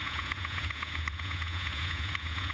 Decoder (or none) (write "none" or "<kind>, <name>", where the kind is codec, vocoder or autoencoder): vocoder, Vocos